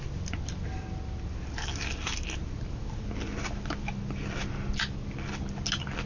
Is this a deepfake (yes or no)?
no